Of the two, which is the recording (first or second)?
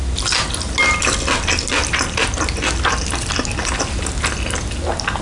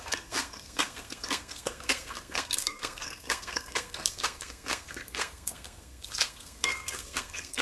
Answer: first